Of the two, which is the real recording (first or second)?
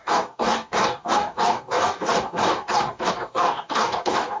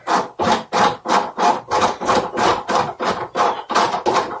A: second